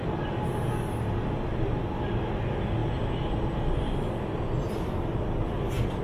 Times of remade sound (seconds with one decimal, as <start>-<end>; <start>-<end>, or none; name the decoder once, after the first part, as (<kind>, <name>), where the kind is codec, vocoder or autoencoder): none

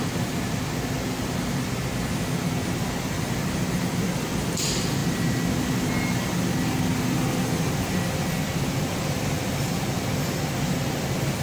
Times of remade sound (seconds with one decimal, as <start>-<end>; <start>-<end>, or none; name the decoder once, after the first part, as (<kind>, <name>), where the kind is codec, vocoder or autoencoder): 5.0-5.9 (vocoder, BigVGAN v2)

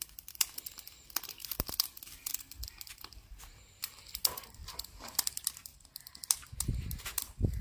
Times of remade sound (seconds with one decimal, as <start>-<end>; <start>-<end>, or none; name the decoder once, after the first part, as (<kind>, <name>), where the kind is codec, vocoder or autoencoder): 0.0-4.6 (vocoder, BigVGAN v2); 5.3-5.7; 7.0-7.6

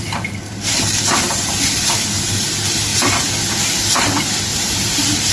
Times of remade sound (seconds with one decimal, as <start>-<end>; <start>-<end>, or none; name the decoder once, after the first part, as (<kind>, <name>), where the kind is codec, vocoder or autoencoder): 4.5-5.3 (vocoder, BigVGAN v2)

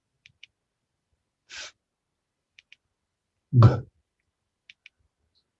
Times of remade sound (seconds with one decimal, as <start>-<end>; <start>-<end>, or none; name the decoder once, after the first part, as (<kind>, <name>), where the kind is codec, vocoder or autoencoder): 0.0-3.4 (vocoder, BigVGAN v2)

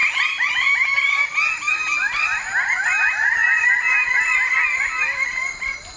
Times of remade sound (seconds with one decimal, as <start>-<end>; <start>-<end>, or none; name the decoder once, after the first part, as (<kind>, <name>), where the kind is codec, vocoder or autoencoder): none

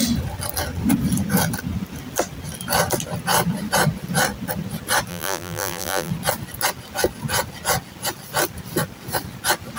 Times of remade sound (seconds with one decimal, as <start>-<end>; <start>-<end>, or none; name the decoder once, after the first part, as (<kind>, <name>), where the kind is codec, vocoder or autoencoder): 5.1-6.1 (vocoder, BigVGAN v2)

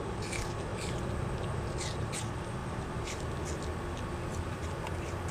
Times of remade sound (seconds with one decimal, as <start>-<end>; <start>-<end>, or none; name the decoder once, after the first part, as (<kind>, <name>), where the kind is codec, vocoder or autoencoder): 2.6-3.2 (vocoder, BigVGAN v2); 4.3-4.8